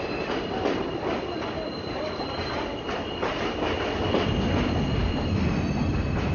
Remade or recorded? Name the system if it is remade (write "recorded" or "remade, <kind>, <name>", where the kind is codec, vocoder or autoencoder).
recorded